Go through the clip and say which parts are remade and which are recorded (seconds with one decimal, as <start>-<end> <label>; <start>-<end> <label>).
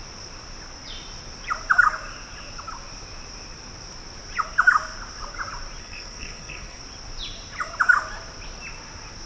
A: 0.0-5.8 recorded; 5.8-6.8 remade; 6.8-9.3 recorded